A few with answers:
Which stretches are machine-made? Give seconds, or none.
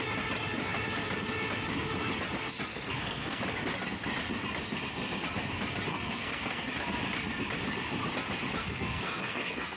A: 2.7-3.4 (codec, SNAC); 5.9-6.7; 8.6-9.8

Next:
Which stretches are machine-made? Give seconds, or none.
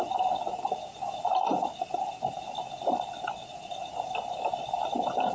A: none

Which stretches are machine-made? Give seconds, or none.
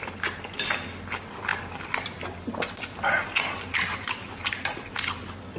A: none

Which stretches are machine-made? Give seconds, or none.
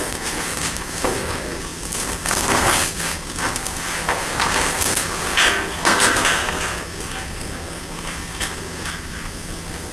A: 0.0-9.9 (codec, SNAC)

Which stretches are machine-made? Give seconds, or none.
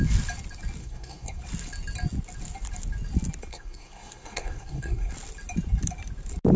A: 0.8-1.4 (codec, SNAC); 3.5-5.1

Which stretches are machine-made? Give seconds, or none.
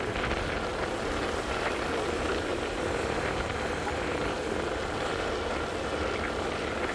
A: none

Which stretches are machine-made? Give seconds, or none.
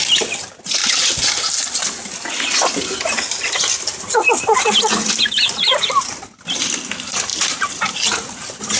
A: none